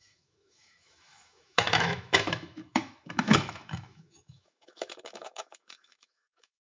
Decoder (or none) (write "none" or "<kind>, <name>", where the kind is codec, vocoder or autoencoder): autoencoder, DAC-VAE